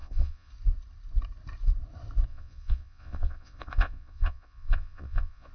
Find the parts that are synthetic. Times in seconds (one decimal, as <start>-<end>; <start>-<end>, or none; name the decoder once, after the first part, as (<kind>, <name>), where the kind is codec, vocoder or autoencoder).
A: 0.0-0.5 (vocoder, Vocos); 2.3-5.5